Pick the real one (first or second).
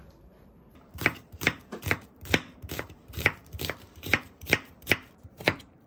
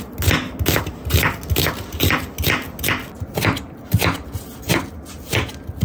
second